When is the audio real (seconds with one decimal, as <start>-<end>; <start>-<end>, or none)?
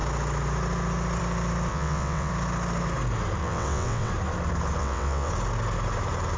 0.0-1.7; 2.3-3.4; 4.1-4.8; 5.3-6.4